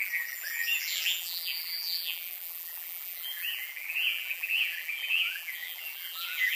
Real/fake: fake